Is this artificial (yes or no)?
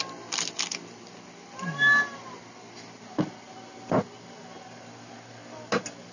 no